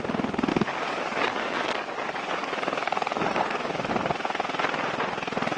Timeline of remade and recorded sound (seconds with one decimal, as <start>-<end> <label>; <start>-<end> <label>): 0.0-0.5 recorded; 0.5-3.9 remade; 3.9-5.6 recorded